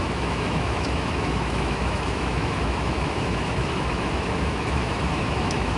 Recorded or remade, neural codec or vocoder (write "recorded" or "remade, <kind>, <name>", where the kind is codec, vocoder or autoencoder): remade, autoencoder, DAC-VAE